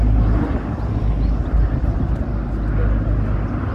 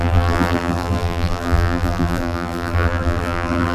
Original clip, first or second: first